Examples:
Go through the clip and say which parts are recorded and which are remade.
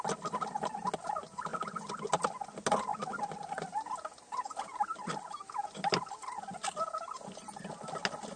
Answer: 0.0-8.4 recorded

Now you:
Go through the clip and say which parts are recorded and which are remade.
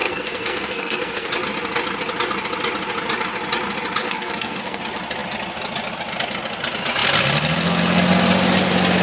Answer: 0.0-1.3 remade; 1.3-4.0 recorded; 4.0-4.8 remade; 4.8-9.0 recorded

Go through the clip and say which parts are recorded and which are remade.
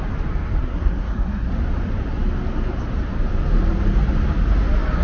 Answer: 0.0-0.6 recorded; 0.6-1.5 remade; 1.5-5.0 recorded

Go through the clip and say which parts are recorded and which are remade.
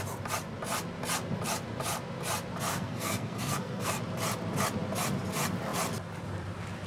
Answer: 0.0-2.7 recorded; 2.7-4.0 remade; 4.0-6.9 recorded